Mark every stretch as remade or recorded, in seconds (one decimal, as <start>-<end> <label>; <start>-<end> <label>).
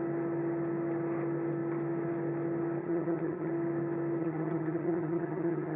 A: 0.0-2.8 recorded; 2.8-3.5 remade; 3.5-4.2 recorded; 4.2-5.8 remade